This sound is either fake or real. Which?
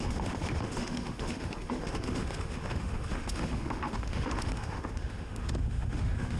fake